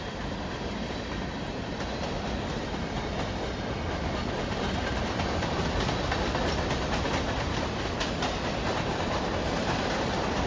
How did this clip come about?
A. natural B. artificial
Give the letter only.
A